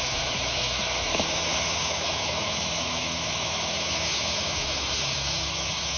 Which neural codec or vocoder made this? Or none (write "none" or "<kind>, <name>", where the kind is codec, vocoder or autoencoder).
autoencoder, DAC-VAE